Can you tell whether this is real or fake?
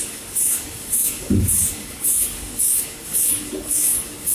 fake